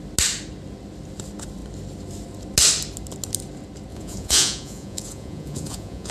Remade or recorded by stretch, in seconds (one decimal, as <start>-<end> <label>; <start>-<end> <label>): 0.0-3.9 recorded; 3.9-6.1 remade